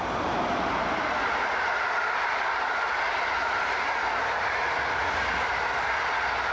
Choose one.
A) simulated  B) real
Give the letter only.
B